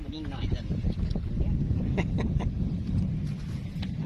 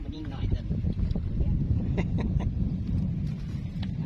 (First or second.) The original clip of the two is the first